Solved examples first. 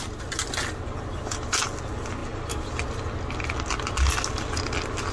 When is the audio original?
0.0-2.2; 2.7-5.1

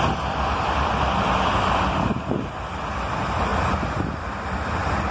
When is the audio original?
3.5-4.0

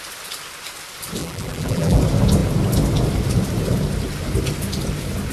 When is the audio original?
0.0-1.2; 2.0-5.3

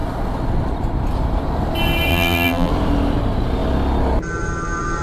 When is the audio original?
0.0-2.1; 2.7-5.0

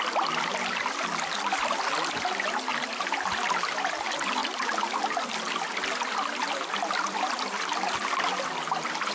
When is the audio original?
0.0-2.7; 3.3-9.1

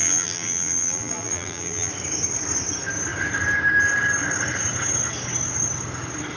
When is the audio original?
1.9-6.4

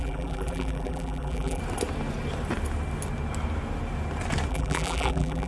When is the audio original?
1.6-4.5

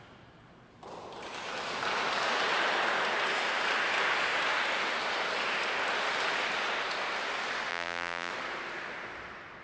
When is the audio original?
0.0-7.7; 8.3-9.6